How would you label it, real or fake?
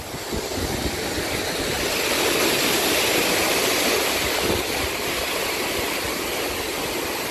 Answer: real